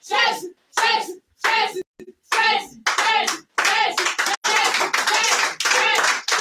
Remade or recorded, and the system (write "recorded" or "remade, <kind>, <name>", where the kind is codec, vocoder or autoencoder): recorded